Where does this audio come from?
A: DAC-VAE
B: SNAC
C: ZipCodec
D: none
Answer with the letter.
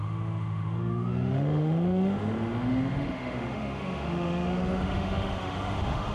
A